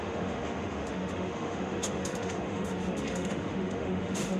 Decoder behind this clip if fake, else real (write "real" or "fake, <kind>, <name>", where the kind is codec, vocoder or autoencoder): fake, autoencoder, DAC-VAE